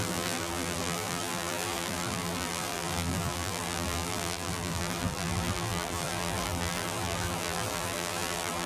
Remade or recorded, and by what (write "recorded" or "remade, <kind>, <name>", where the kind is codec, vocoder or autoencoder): remade, vocoder, BigVGAN v2